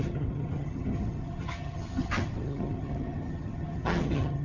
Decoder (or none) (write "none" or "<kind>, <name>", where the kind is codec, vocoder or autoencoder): vocoder, HiFi-GAN